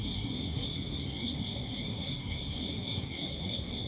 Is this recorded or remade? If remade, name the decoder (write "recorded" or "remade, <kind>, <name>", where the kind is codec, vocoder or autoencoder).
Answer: remade, codec, SNAC